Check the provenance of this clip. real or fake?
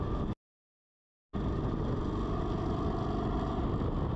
real